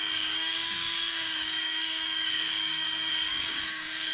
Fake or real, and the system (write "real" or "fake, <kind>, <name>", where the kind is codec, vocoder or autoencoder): fake, codec, DAC